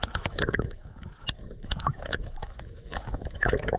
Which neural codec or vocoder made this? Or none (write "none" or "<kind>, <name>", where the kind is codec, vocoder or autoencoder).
autoencoder, DAC-VAE